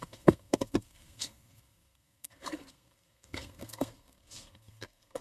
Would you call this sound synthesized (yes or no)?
yes